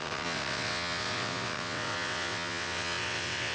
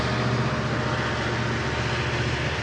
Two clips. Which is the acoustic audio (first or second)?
second